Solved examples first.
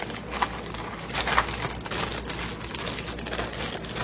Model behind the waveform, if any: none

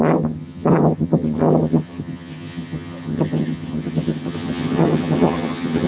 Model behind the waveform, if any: vocoder, HiFi-GAN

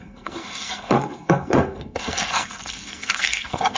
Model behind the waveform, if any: codec, SNAC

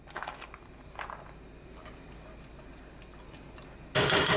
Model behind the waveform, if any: none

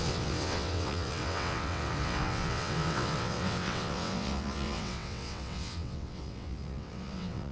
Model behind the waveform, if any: vocoder, WaveNeXt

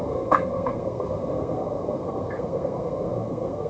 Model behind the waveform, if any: codec, SNAC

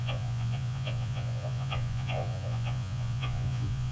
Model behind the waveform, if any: vocoder, Vocos